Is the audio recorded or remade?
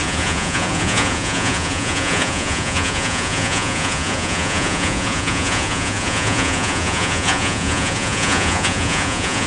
remade